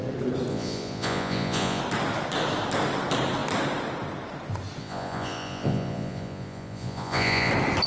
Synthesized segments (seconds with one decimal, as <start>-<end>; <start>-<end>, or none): 0.5-1.8; 4.8-7.5